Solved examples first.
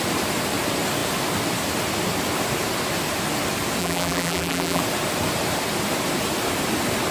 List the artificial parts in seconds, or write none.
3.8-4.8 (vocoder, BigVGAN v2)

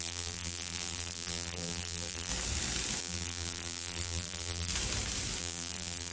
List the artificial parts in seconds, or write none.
0.0-2.3 (vocoder, BigVGAN v2); 3.0-4.7; 5.4-6.1

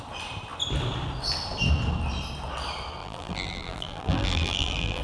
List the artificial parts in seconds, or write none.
3.0-5.0 (vocoder, BigVGAN v2)

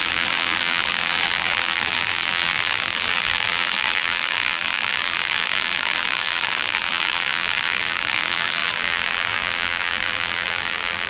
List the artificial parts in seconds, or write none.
0.0-11.1 (vocoder, BigVGAN v2)